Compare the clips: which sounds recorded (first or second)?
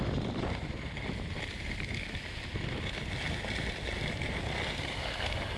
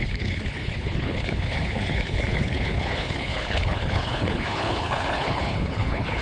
first